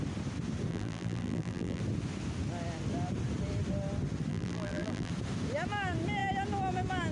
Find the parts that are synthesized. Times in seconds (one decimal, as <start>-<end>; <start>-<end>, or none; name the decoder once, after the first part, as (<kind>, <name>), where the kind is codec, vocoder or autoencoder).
0.7-1.8 (vocoder, BigVGAN v2); 4.3-5.1